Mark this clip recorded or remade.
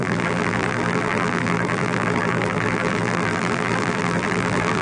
remade